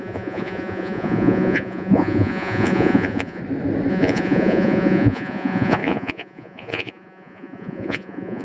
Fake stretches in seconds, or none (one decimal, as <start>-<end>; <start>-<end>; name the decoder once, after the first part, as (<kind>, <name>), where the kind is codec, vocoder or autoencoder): 0.0-3.4 (vocoder, Vocos); 3.9-8.4